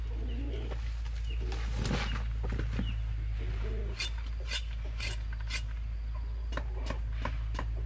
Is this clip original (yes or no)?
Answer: yes